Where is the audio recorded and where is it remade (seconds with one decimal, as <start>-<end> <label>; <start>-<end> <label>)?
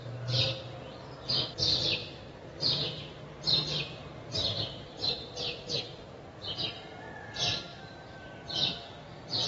0.0-2.0 recorded; 2.0-5.8 remade; 5.8-7.7 recorded; 7.7-8.3 remade; 8.3-9.5 recorded